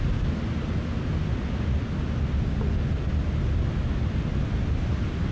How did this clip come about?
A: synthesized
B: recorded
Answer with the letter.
B